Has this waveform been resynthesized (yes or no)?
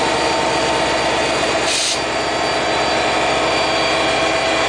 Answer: no